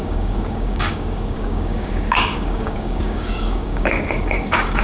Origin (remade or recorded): remade